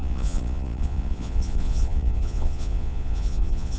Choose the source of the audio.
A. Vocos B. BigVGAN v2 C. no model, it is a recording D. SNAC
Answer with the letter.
A